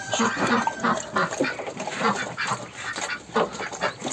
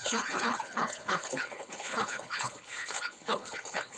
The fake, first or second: second